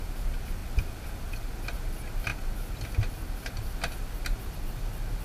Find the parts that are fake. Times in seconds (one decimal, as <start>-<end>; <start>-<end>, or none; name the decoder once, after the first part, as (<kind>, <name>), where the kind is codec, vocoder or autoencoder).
none